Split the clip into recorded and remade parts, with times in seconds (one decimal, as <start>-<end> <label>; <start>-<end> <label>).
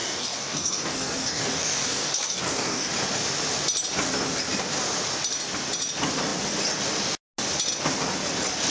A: 0.0-2.9 remade; 2.9-8.7 recorded